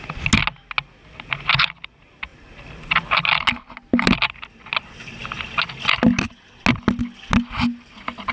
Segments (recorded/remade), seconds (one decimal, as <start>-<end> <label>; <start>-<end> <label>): 0.0-8.3 recorded

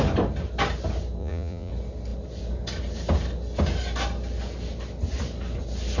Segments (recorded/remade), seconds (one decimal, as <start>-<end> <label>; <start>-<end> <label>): 0.0-1.2 recorded; 1.2-1.7 remade; 1.7-6.0 recorded

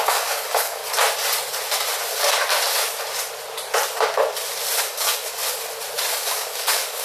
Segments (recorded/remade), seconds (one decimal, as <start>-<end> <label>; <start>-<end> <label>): 0.0-0.8 remade; 0.8-4.8 recorded; 4.8-5.4 remade; 5.4-6.1 recorded; 6.1-7.0 remade

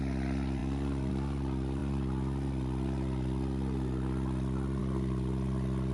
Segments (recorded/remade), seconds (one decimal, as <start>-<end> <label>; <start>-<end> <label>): 0.0-5.9 recorded

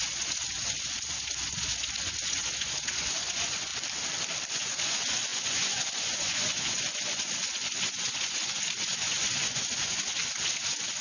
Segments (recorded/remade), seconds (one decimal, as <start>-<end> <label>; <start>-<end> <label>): 0.0-3.7 remade; 3.7-4.5 recorded; 4.5-11.0 remade

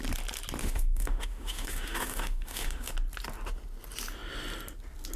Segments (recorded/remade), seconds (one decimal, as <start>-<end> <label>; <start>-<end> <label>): 0.0-0.6 recorded; 0.6-2.9 remade; 2.9-5.2 recorded

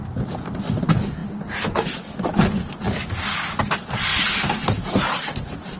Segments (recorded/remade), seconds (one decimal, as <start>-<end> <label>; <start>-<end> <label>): 0.0-5.8 recorded